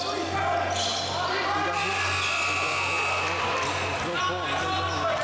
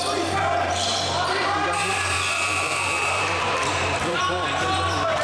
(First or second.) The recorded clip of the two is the first